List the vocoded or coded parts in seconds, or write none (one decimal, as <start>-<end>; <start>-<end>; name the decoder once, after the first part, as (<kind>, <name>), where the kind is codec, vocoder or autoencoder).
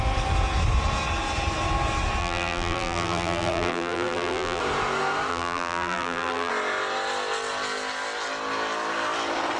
2.2-4.6 (vocoder, BigVGAN v2); 5.3-6.5